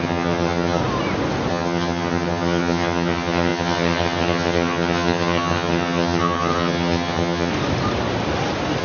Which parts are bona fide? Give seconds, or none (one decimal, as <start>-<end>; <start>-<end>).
0.8-1.5; 7.5-8.8